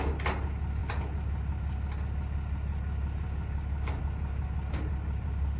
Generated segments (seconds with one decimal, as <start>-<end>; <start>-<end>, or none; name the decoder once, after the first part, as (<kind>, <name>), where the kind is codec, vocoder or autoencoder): none